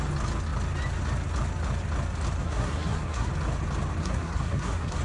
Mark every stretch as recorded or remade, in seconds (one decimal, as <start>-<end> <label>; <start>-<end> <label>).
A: 0.0-2.4 recorded; 2.4-3.3 remade; 3.3-4.0 recorded; 4.0-5.0 remade